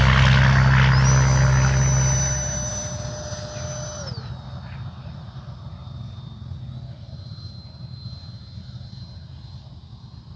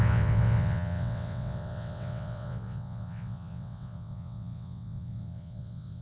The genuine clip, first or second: first